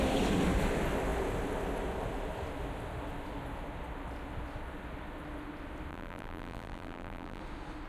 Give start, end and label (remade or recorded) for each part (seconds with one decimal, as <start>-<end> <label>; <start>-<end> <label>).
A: 0.0-5.9 recorded; 5.9-7.4 remade; 7.4-7.9 recorded